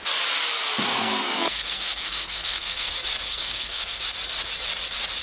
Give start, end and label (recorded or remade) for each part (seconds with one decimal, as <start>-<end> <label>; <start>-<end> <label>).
0.0-0.9 recorded; 0.9-2.9 remade; 2.9-3.3 recorded; 3.3-4.0 remade; 4.0-5.2 recorded